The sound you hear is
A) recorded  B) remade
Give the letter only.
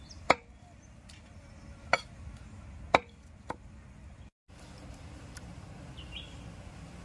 A